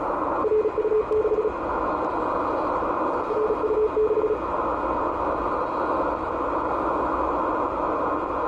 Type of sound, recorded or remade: recorded